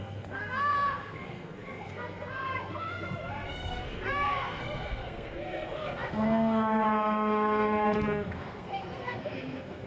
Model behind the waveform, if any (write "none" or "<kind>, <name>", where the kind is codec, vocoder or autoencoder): codec, SNAC